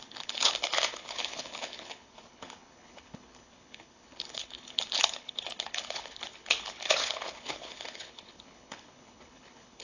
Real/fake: fake